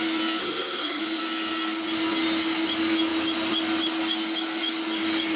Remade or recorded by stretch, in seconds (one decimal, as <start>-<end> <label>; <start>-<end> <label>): 0.0-0.4 recorded; 0.4-1.0 remade; 1.0-5.4 recorded